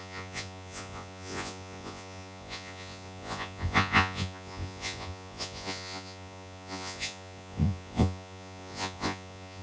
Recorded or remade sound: remade